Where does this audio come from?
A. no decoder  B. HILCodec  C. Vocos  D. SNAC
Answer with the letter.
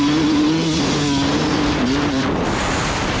A